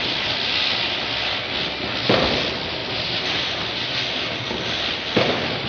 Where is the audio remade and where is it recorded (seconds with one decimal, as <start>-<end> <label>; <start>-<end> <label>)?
0.0-2.8 recorded; 2.8-3.6 remade; 3.6-5.7 recorded